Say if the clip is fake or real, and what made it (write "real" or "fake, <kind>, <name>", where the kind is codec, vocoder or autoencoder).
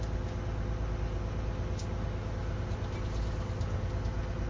real